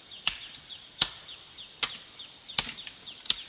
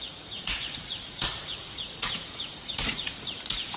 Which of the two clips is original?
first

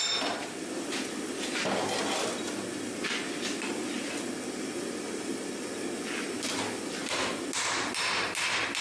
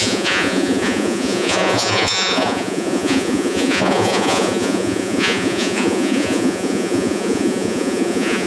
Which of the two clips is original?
first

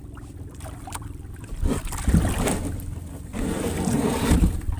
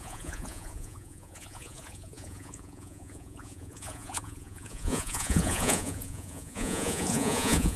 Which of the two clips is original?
first